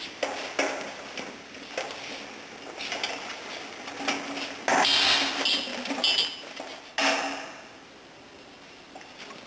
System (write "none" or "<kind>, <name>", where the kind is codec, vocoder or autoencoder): none